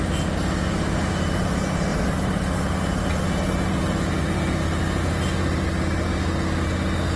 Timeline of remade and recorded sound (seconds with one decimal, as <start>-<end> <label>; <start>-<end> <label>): 0.0-7.2 recorded